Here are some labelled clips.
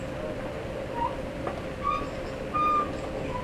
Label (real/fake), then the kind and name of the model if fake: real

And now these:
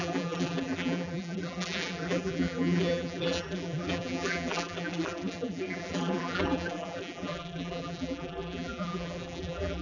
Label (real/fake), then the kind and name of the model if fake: fake, vocoder, BigVGAN v2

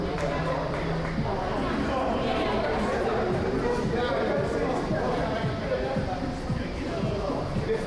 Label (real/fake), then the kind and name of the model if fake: fake, vocoder, BigVGAN v2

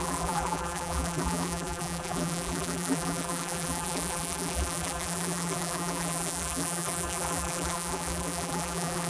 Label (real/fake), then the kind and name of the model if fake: fake, vocoder, BigVGAN v2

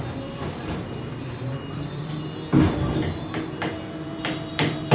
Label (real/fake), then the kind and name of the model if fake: fake, vocoder, BigVGAN v2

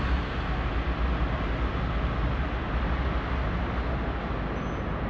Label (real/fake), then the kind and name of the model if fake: real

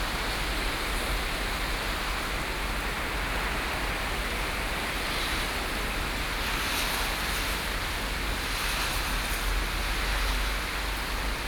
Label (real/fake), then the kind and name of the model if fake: real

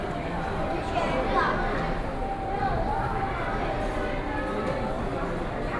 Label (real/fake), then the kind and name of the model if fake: real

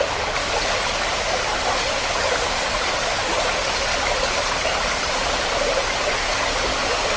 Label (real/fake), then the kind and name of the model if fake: real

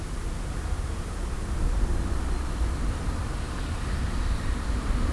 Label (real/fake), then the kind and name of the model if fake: fake, vocoder, BigVGAN v2